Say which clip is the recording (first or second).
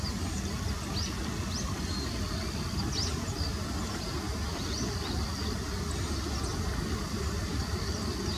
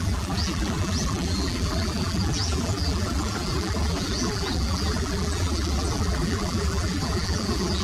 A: first